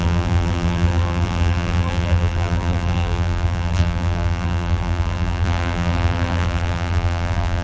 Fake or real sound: fake